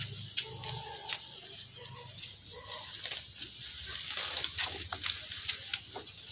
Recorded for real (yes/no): yes